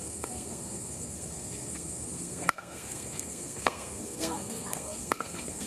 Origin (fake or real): fake